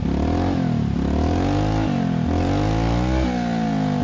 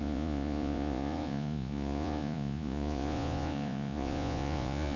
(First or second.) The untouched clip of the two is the first